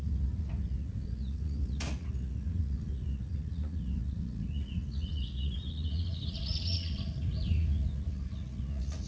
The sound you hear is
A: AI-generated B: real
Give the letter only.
A